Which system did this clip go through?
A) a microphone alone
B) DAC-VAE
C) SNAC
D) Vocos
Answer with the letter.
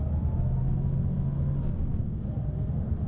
A